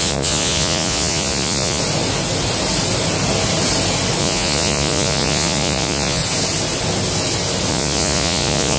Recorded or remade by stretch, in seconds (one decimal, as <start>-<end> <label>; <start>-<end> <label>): 0.0-1.8 remade; 1.8-4.2 recorded; 4.2-6.2 remade; 6.2-7.7 recorded; 7.7-8.8 remade